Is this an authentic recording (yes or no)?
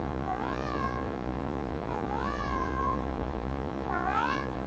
no